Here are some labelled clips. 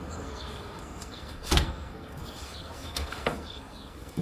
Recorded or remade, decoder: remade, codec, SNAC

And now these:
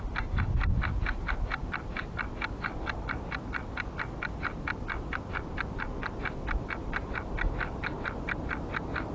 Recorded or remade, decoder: recorded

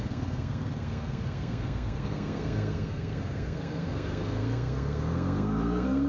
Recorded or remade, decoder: remade, codec, SNAC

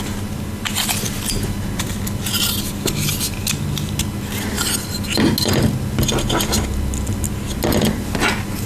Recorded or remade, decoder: recorded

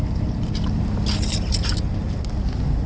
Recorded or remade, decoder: recorded